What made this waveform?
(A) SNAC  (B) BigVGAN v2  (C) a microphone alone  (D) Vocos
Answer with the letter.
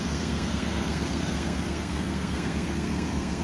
A